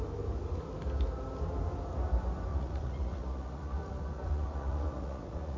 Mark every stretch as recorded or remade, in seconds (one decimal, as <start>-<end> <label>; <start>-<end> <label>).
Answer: 0.0-2.5 recorded; 2.5-5.6 remade